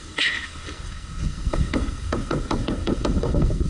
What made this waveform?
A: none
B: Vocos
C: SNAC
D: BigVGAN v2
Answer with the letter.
C